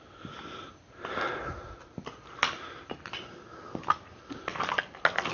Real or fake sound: real